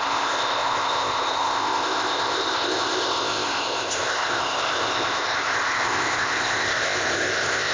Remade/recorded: remade